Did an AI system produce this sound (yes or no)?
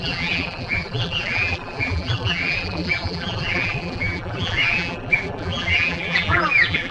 yes